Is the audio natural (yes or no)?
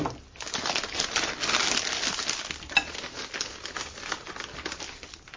yes